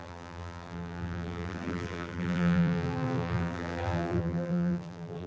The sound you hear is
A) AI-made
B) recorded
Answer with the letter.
A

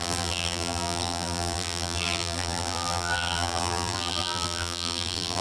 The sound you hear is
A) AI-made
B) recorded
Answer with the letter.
A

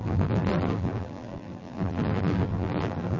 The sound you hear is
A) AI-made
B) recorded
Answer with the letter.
A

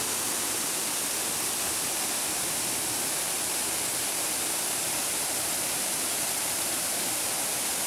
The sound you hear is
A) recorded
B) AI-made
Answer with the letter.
A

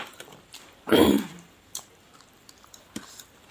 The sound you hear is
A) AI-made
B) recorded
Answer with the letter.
A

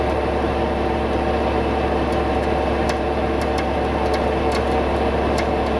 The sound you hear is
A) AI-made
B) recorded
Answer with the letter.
A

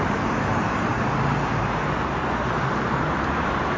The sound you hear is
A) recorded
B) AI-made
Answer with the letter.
B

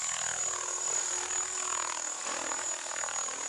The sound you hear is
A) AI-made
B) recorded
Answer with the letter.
B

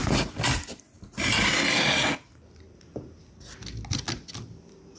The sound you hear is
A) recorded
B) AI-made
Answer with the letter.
A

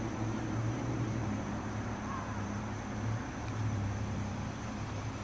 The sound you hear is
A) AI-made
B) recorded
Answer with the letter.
A